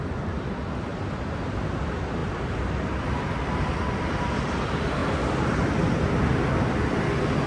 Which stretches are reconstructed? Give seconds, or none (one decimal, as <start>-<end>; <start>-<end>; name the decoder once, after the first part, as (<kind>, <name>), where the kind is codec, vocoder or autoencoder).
0.0-7.5 (vocoder, BigVGAN v2)